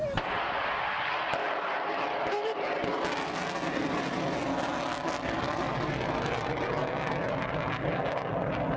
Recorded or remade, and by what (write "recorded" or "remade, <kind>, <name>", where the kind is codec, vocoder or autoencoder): recorded